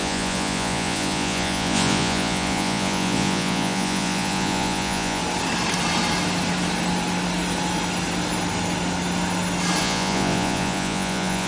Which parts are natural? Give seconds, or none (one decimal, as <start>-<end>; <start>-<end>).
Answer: 5.2-9.8